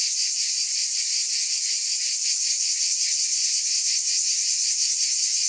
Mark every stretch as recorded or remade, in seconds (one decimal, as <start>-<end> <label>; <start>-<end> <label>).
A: 0.0-5.5 recorded